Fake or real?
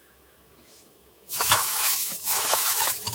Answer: fake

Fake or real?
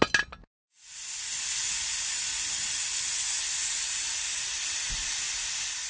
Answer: real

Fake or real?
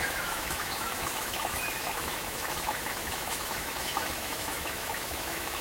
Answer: fake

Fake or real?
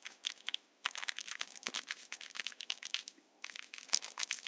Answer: fake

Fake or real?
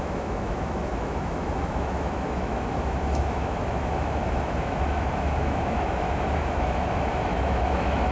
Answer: fake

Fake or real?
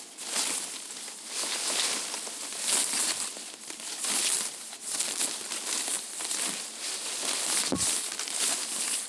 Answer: real